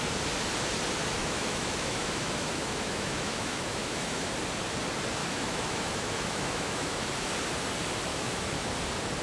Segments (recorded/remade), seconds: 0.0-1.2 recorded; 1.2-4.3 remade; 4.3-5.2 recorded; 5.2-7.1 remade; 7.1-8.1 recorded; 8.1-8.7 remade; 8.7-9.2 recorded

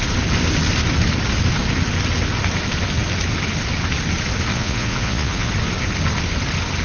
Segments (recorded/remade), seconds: 0.0-4.5 recorded; 4.5-5.5 remade; 5.5-6.8 recorded

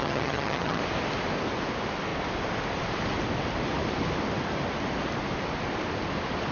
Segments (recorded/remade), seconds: 0.0-0.8 remade; 0.8-6.5 recorded

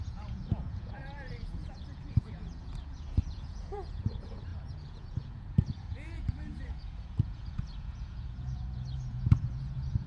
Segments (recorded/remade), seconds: 0.0-10.1 remade

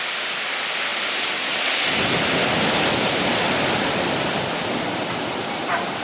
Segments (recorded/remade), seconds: 0.0-6.0 recorded